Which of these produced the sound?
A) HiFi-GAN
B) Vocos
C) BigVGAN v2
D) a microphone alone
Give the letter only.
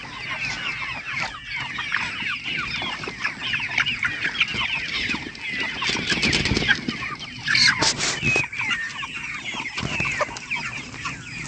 D